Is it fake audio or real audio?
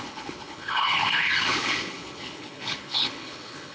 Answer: fake